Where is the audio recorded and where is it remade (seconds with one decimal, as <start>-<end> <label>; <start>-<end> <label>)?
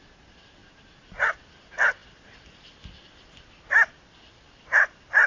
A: 0.0-5.3 recorded